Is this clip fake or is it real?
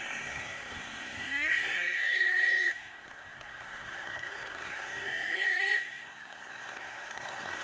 fake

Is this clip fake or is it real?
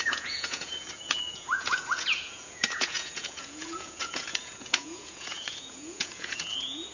fake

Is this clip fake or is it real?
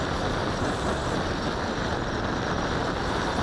real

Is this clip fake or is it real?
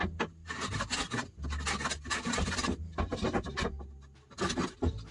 real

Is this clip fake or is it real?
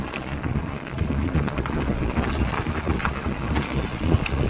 fake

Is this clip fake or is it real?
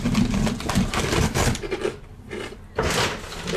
real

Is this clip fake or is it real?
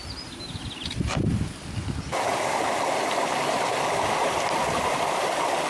real